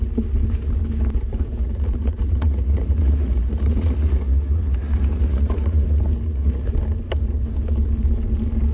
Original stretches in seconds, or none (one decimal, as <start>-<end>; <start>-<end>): 0.0-1.6; 6.7-8.7